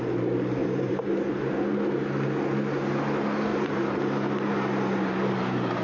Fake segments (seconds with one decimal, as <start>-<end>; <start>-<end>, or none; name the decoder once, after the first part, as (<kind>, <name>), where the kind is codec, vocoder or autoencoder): 0.6-1.5 (vocoder, BigVGAN v2); 3.5-4.0